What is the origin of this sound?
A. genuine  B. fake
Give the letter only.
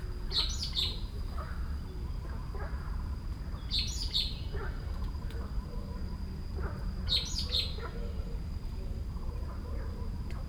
A